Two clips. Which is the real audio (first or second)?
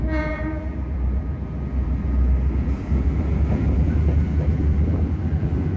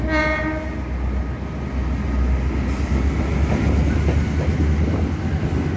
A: second